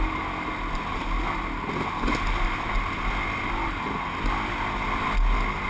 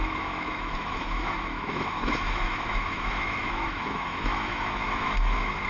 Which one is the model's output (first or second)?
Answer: second